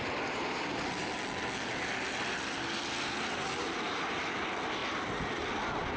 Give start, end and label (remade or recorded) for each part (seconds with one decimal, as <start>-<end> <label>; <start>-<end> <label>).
0.0-6.0 recorded